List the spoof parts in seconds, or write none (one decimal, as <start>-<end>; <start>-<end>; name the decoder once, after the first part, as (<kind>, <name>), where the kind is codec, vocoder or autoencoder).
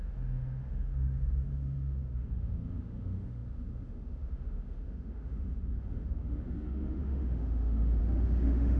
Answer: 0.0-8.8 (autoencoder, DAC-VAE)